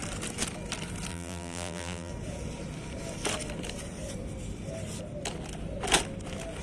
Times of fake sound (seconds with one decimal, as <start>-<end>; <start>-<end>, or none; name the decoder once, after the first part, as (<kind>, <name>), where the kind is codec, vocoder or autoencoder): 1.1-2.1 (vocoder, BigVGAN v2)